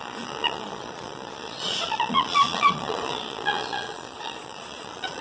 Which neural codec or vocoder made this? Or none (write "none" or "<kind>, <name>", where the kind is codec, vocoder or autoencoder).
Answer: vocoder, Vocos